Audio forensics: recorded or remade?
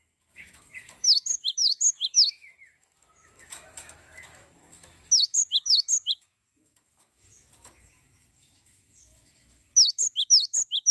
remade